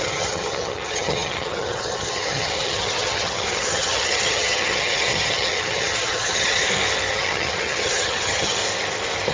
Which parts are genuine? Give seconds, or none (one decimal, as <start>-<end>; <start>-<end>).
6.6-7.1; 8.6-9.3